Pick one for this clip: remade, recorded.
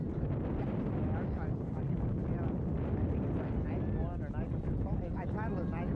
recorded